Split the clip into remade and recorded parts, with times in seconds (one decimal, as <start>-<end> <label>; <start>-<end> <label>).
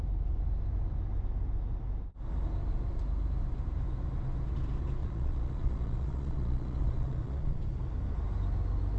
0.0-5.0 recorded; 5.0-7.6 remade; 7.6-9.0 recorded